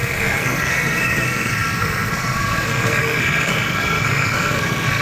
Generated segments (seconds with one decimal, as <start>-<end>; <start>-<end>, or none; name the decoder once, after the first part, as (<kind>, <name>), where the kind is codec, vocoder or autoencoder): 0.0-5.0 (codec, SNAC)